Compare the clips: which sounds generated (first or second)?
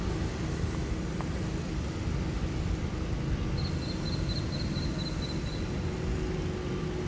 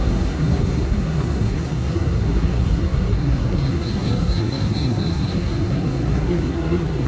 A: second